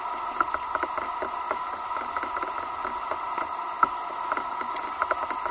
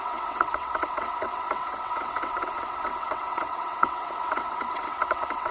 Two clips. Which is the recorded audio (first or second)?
first